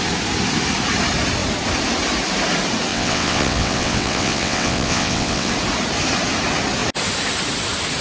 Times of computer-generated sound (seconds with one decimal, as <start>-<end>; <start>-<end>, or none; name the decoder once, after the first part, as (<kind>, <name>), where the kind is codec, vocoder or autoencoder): 2.9-5.5 (vocoder, WaveNeXt)